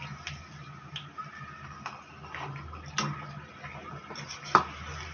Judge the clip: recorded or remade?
recorded